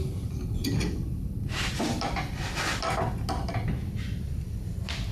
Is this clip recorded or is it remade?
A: recorded